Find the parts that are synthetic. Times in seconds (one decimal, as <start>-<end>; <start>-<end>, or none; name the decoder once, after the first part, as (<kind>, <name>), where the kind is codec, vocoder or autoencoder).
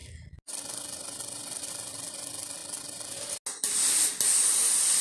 none